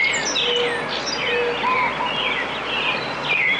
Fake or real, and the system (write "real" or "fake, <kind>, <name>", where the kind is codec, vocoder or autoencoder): real